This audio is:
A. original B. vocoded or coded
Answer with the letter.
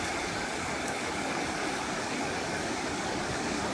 B